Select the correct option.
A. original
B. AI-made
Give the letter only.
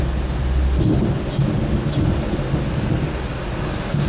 A